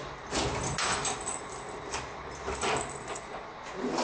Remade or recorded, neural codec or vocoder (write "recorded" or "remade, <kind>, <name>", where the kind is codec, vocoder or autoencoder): recorded